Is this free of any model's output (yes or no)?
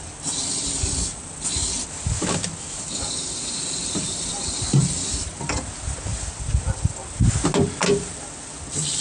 yes